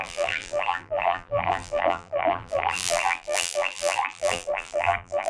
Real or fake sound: fake